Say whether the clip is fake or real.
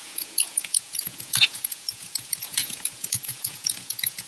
fake